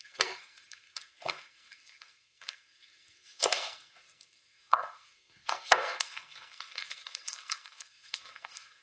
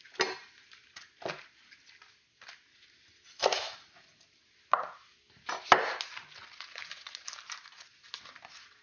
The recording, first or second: second